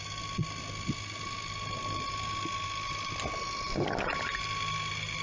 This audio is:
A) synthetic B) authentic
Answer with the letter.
A